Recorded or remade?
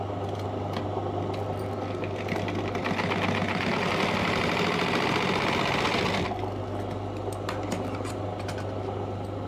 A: recorded